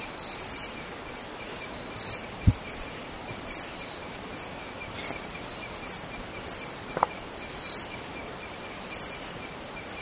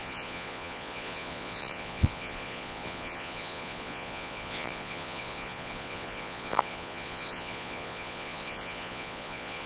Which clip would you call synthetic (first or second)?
second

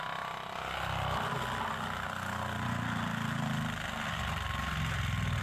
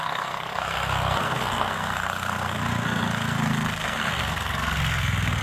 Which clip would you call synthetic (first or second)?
second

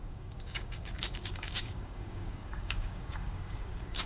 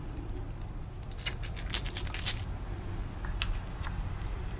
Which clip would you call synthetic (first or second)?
first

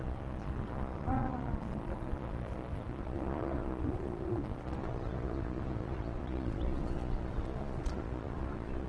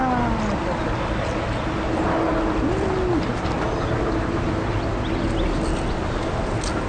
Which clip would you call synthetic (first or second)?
first